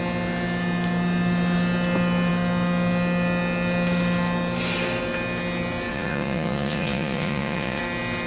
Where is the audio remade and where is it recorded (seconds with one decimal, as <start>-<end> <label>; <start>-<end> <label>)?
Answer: 0.0-5.9 recorded; 5.9-7.8 remade; 7.8-8.3 recorded